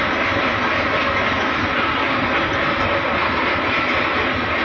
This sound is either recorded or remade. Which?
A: recorded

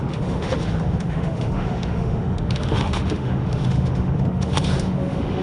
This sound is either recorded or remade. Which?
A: remade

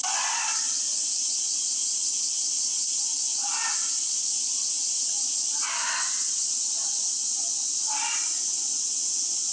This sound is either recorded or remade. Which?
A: recorded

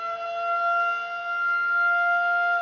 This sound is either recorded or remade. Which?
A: recorded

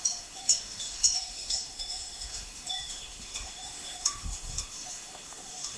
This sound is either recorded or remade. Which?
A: remade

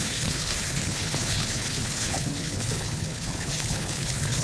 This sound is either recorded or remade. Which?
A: remade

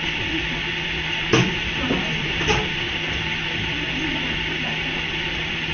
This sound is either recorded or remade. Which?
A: remade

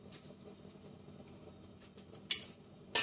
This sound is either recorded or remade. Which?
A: recorded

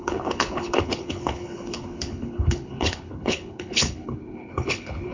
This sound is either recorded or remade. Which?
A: remade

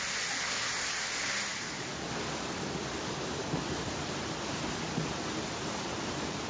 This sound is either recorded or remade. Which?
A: recorded